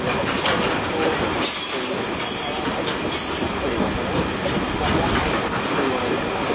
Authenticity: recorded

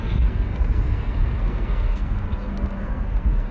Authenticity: remade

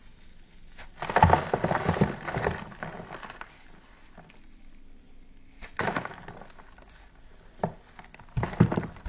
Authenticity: recorded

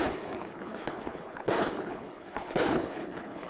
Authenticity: remade